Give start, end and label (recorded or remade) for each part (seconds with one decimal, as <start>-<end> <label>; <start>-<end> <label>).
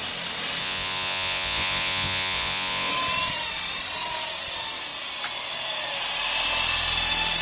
0.0-0.6 recorded; 0.6-2.9 remade; 2.9-7.4 recorded